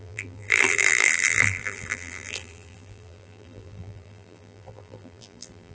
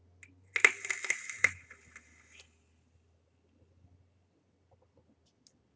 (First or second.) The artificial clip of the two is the first